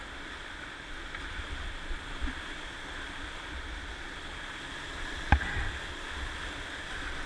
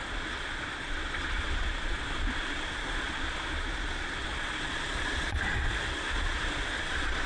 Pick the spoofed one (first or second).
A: second